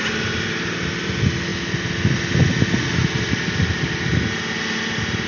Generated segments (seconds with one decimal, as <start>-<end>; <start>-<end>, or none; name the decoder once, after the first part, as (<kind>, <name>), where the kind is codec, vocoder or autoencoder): none